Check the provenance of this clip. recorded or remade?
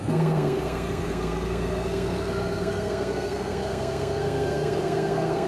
remade